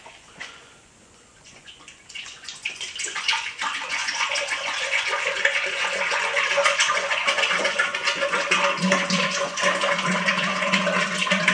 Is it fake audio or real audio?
fake